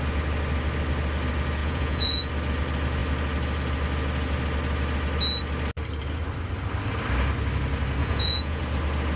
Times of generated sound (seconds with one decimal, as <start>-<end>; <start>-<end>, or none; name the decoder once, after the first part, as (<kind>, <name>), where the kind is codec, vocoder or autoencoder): 1.6-2.3 (vocoder, Vocos); 8.0-8.6